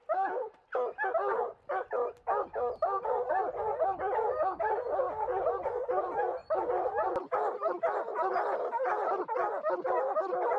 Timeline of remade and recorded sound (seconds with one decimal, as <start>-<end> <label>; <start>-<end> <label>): 0.0-10.6 recorded